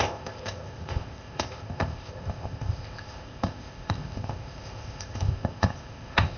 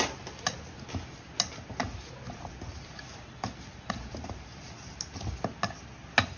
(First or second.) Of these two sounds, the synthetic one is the first